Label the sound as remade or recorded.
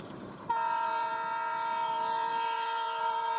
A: remade